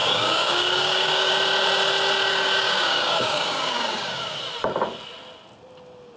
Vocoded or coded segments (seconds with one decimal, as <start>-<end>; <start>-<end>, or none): 0.0-1.3; 2.3-4.4